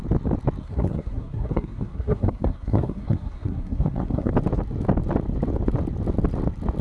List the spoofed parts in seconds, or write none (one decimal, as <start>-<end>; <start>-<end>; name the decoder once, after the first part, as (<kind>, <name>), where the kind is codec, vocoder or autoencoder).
0.6-4.3 (codec, SNAC)